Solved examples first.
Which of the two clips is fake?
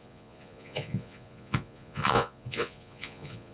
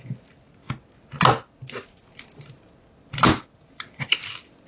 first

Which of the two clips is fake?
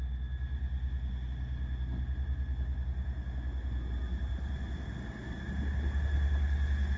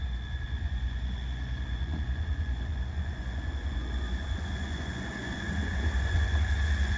second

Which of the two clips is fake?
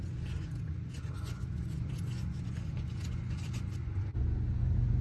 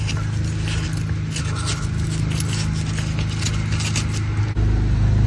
first